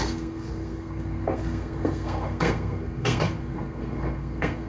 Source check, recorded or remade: remade